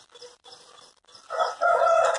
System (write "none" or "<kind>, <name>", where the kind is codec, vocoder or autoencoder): vocoder, BigVGAN v2